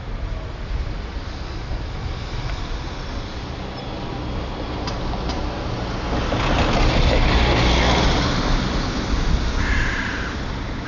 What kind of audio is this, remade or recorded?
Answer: recorded